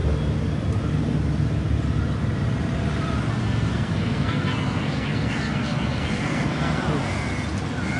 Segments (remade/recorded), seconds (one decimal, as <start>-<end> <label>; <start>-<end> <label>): 0.0-3.4 recorded; 3.4-6.8 remade; 6.8-8.0 recorded